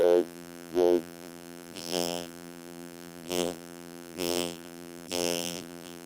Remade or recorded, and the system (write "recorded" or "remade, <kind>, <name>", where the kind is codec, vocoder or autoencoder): remade, vocoder, BigVGAN v2